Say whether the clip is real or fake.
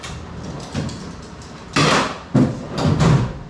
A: real